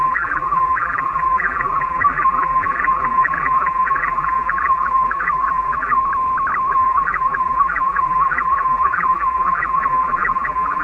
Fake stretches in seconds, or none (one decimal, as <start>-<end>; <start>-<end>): 0.0-6.0; 6.7-10.8